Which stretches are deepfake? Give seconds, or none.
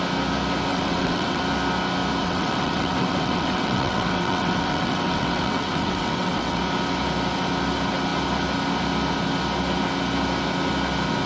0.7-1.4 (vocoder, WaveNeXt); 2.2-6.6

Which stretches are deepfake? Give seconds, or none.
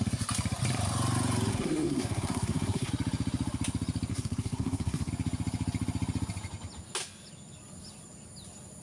1.5-2.9 (codec, SNAC); 4.1-5.1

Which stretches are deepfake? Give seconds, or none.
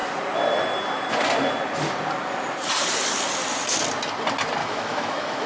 4.6-5.5 (autoencoder, DAC-VAE)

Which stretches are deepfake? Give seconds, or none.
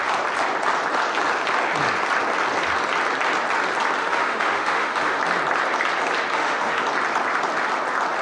4.0-5.2 (autoencoder, DAC-VAE); 6.3-6.8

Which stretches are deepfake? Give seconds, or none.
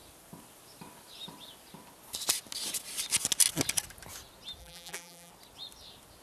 4.6-5.3 (vocoder, BigVGAN v2)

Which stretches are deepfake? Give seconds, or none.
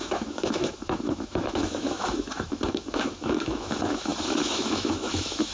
0.0-5.5 (autoencoder, DAC-VAE)